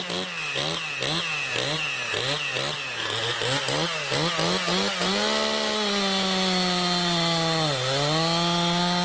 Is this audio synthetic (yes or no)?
no